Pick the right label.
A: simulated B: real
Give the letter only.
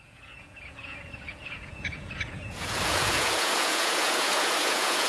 A